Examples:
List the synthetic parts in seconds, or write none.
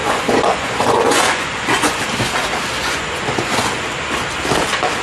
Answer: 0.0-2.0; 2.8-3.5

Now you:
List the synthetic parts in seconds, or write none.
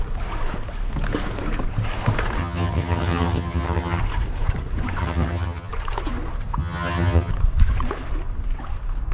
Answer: 2.4-4.0; 5.0-5.7; 6.6-7.3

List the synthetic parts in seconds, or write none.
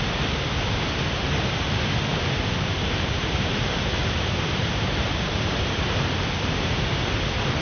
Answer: 2.1-5.3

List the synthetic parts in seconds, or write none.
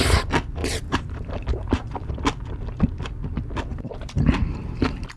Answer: 0.6-2.1; 3.7-4.2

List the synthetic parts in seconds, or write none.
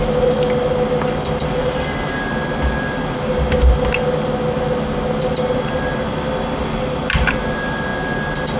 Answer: none